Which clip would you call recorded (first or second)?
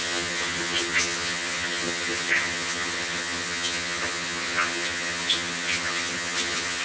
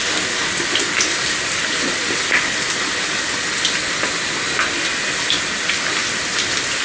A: second